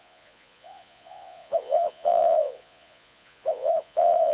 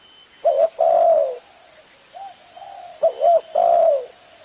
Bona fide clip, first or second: second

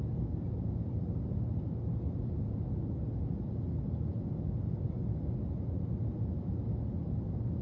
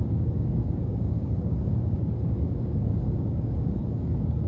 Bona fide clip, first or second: first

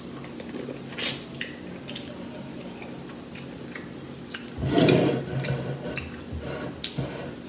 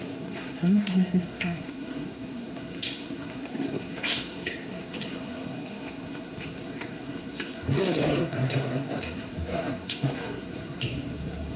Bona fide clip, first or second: first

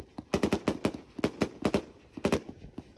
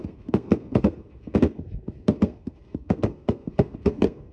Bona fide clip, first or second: first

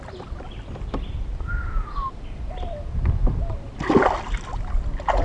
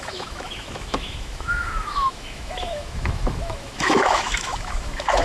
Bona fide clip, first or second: first